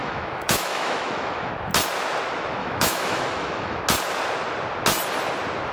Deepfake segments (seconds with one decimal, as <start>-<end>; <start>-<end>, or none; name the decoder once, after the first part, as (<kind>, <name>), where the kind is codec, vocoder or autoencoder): 0.0-1.5 (autoencoder, DAC-VAE); 2.6-3.8